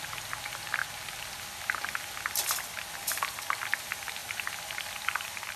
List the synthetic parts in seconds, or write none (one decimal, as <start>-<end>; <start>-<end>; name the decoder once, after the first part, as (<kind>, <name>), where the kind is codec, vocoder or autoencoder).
none